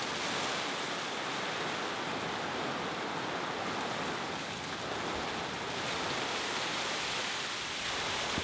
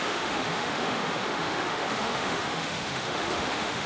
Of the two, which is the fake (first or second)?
second